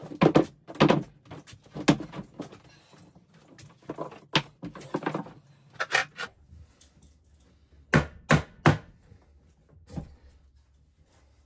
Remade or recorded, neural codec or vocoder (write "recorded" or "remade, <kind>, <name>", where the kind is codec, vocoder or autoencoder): recorded